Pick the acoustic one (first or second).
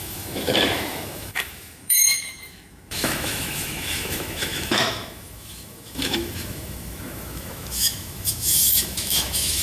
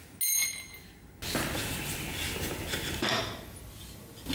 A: second